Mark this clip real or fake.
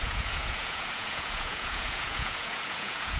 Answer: fake